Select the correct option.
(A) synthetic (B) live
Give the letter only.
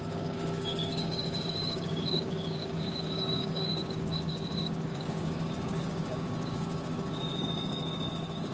A